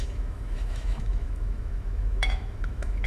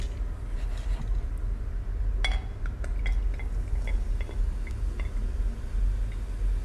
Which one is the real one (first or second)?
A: second